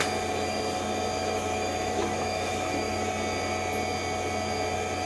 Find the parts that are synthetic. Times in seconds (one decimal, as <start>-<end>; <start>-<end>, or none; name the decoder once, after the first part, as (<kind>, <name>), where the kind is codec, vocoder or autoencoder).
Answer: 1.2-3.1 (autoencoder, DAC-VAE)